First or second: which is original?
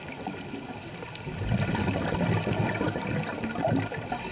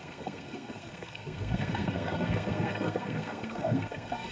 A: first